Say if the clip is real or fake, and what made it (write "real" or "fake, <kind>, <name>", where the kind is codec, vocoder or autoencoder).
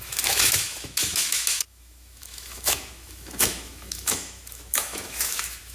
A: fake, autoencoder, DAC-VAE